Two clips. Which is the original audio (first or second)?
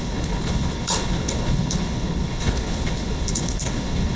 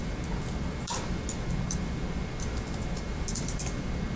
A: second